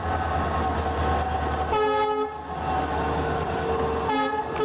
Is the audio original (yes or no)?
yes